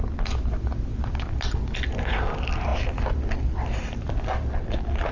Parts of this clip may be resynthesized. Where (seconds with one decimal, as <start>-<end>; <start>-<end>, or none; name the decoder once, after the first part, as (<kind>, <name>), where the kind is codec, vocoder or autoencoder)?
none